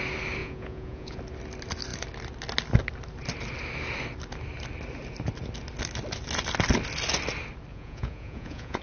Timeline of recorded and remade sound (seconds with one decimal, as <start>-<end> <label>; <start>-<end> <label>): 0.0-0.4 recorded; 0.4-1.2 remade; 1.2-7.7 recorded; 7.7-8.8 remade